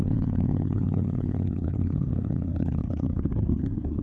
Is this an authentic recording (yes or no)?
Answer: no